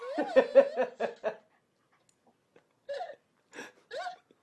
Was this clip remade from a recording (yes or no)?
no